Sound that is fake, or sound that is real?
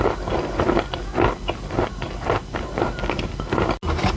real